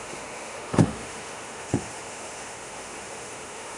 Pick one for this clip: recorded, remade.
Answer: remade